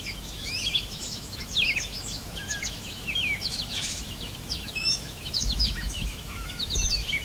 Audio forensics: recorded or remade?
remade